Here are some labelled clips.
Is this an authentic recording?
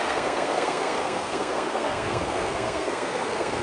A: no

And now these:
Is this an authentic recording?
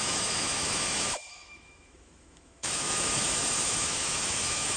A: no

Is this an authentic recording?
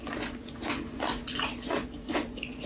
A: no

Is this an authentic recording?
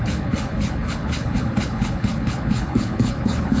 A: no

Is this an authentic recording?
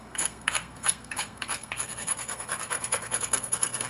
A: no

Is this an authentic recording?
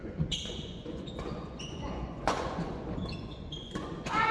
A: no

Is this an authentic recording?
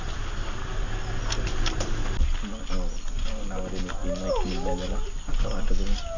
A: yes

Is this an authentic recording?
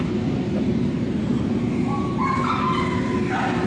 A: yes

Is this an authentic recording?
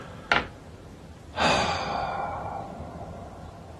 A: yes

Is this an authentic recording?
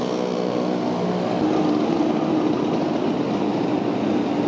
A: yes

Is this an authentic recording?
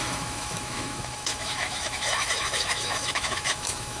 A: no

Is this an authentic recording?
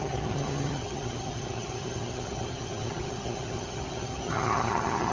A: no